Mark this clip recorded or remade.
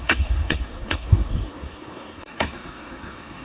remade